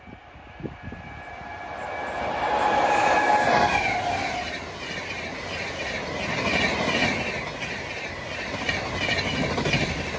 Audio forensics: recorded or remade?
recorded